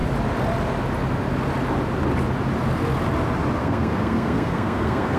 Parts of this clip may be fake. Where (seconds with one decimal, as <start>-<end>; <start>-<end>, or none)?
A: 3.6-5.2